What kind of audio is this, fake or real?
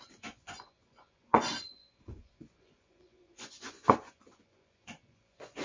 fake